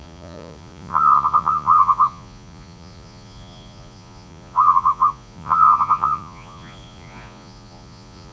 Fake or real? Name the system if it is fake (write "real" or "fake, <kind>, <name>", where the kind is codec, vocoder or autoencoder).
fake, vocoder, Vocos